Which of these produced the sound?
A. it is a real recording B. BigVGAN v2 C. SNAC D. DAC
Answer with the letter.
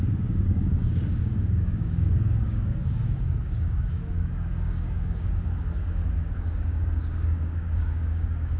D